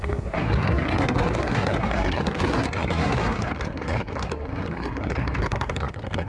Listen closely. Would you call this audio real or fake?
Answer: fake